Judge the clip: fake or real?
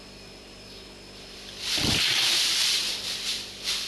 fake